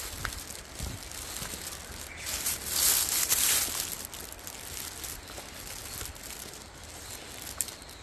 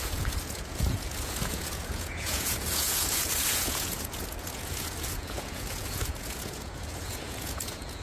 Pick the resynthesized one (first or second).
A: second